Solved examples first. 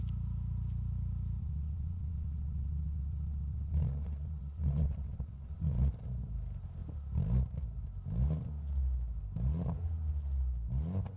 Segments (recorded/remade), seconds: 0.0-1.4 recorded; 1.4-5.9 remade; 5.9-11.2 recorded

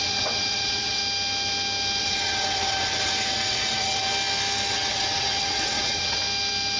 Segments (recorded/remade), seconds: 0.0-1.0 remade; 1.0-2.0 recorded; 2.0-4.1 remade; 4.1-4.7 recorded; 4.7-6.2 remade; 6.2-6.8 recorded

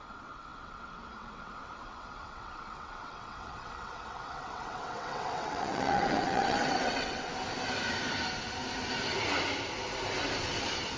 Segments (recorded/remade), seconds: 0.0-7.3 remade; 7.3-11.0 recorded